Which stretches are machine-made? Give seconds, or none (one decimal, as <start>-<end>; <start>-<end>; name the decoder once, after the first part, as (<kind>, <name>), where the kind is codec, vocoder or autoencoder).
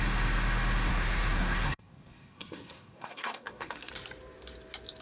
0.9-3.9 (codec, SNAC)